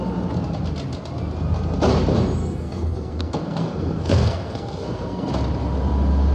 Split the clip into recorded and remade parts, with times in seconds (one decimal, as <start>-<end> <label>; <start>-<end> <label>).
0.0-2.4 recorded; 2.4-5.3 remade; 5.3-6.3 recorded